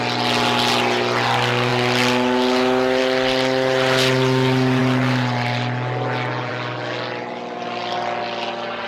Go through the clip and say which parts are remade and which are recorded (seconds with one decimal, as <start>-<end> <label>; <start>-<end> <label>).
0.0-8.9 recorded